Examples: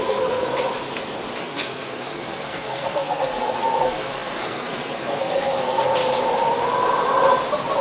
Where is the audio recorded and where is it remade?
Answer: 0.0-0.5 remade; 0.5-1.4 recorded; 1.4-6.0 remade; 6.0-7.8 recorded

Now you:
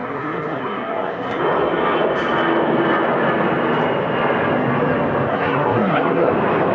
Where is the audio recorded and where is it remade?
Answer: 0.0-1.4 remade; 1.4-5.3 recorded; 5.3-6.3 remade; 6.3-6.7 recorded

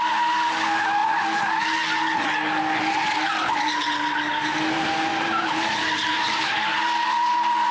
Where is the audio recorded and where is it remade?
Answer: 0.0-5.1 recorded; 5.1-6.6 remade; 6.6-7.7 recorded

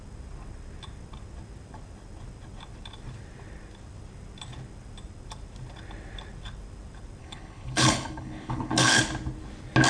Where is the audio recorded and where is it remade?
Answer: 0.0-7.2 recorded; 7.2-9.0 remade; 9.0-9.9 recorded